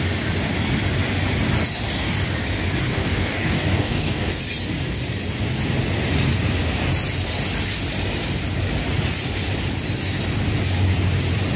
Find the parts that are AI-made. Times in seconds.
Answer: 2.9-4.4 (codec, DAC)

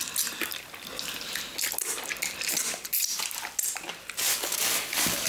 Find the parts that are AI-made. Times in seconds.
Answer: 4.3-5.3 (codec, DAC)

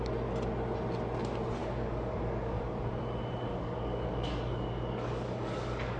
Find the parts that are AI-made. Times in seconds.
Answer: 1.6-2.7 (codec, DAC); 3.5-6.0

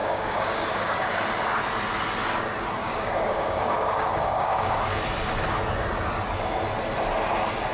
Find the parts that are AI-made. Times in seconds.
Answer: 0.0-1.2 (codec, DAC); 2.8-5.0